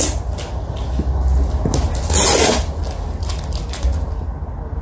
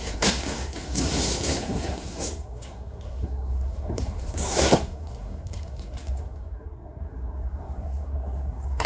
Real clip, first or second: first